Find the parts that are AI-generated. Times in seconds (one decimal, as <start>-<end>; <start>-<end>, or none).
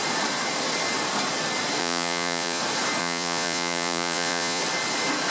1.8-2.6; 3.0-4.6